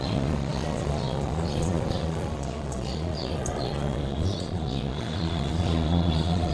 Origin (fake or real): fake